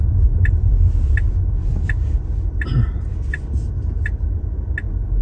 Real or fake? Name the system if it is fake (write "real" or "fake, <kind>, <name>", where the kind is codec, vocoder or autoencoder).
real